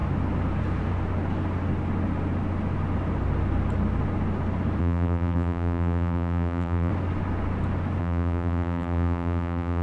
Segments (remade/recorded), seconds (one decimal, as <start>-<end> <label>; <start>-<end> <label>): 0.0-4.8 recorded; 4.8-6.9 remade; 6.9-8.0 recorded; 8.0-9.8 remade